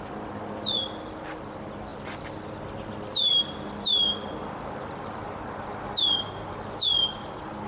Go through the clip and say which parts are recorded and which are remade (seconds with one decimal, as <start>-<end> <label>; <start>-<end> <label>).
0.0-7.7 recorded